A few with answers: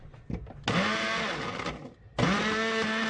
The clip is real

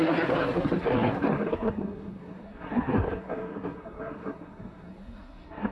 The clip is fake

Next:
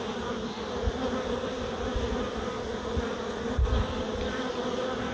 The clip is real